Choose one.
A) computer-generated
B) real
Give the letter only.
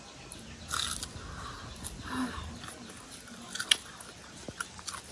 B